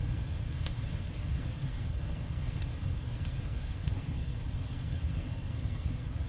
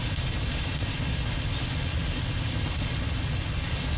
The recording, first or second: second